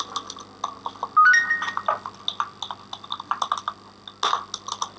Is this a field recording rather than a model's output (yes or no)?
yes